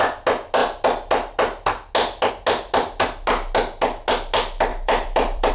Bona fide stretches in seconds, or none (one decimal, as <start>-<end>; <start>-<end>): 0.0-4.7